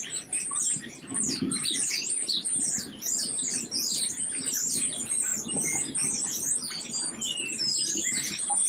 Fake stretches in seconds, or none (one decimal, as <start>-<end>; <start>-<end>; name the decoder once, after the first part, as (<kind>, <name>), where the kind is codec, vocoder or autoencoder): 0.0-5.3 (vocoder, BigVGAN v2); 7.6-8.7